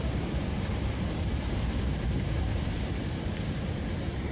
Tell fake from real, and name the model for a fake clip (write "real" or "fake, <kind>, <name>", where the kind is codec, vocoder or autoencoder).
fake, vocoder, BigVGAN v2